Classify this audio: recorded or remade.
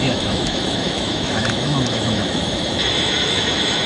remade